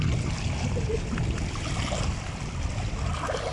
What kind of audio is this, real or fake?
real